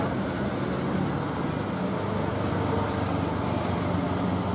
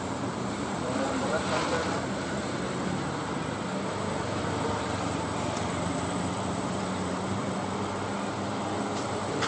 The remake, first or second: second